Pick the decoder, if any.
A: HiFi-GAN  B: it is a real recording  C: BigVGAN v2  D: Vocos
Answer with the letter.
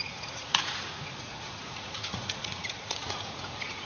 D